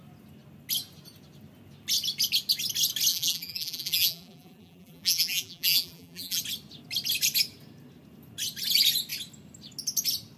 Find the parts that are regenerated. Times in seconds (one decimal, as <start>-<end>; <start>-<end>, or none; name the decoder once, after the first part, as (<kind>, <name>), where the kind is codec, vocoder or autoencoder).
3.1-6.4 (vocoder, BigVGAN v2)